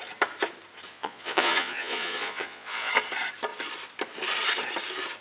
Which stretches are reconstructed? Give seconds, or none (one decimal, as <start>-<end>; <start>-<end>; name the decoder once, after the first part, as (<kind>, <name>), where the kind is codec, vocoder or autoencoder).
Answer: 0.9-2.9 (vocoder, Vocos)